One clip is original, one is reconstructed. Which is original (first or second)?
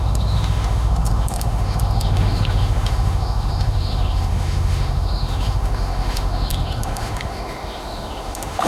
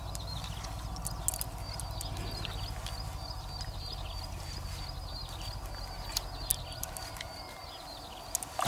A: second